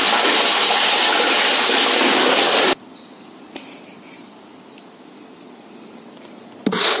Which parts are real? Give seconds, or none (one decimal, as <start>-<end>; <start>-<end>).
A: 1.5-7.0